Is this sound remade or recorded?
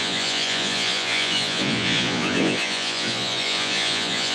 remade